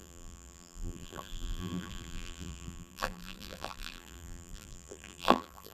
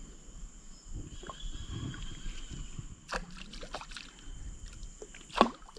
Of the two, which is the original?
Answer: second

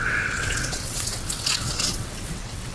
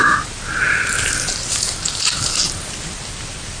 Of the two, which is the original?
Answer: second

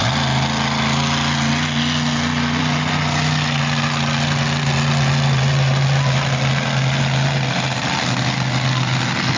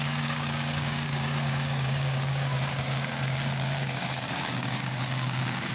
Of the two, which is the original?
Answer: first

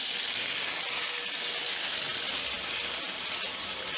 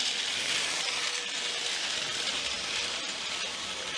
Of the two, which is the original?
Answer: first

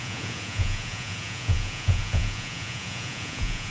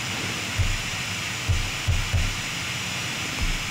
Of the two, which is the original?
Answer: second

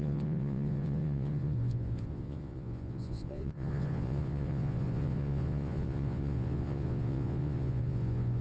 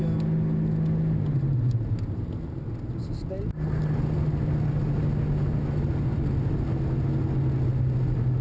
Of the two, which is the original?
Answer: second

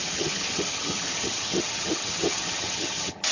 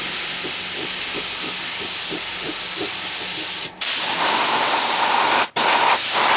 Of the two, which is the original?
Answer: second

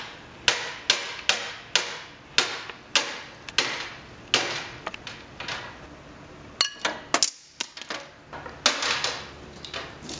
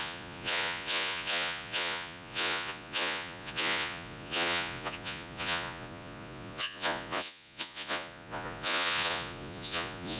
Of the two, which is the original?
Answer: first